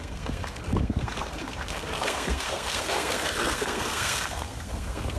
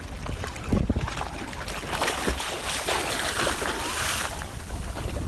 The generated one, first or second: first